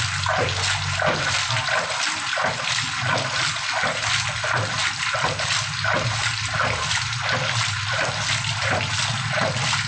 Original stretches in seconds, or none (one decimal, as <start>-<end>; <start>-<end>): 0.0-9.9